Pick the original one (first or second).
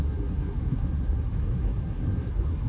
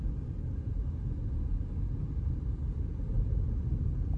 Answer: second